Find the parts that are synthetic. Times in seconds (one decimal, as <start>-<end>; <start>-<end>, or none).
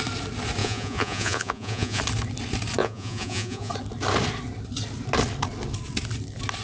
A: 0.6-2.0; 2.8-3.7